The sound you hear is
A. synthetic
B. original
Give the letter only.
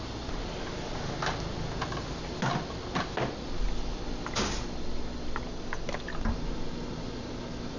B